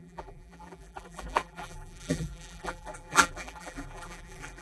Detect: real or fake fake